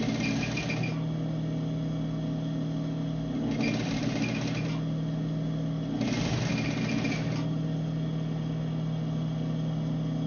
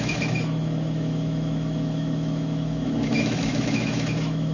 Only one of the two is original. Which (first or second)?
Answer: first